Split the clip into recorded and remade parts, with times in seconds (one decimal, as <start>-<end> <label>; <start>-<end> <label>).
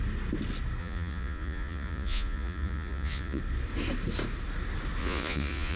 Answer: 0.0-0.8 recorded; 0.8-3.4 remade; 3.4-5.0 recorded; 5.0-5.8 remade